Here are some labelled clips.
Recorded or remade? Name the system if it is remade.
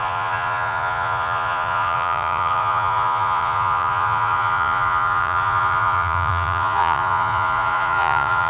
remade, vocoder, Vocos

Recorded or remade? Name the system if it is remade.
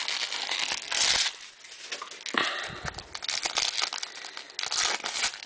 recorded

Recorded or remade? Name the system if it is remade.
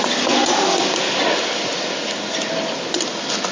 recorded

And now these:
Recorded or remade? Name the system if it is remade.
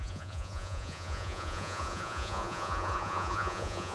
remade, vocoder, Vocos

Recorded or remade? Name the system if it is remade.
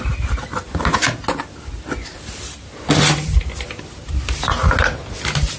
recorded